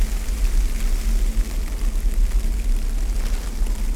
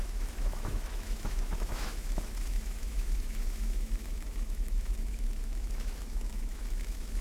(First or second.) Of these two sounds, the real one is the first